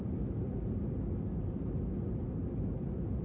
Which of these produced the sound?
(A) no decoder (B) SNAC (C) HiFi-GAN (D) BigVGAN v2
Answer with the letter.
A